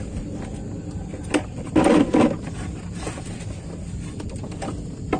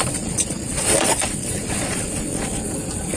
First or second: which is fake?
second